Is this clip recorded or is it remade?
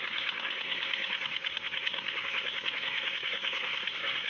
remade